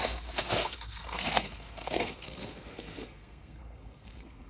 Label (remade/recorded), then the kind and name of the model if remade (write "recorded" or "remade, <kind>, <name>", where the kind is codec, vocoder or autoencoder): remade, codec, SNAC